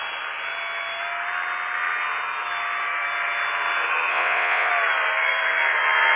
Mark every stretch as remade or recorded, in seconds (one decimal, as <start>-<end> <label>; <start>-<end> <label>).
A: 0.0-4.1 recorded; 4.1-4.7 remade; 4.7-6.2 recorded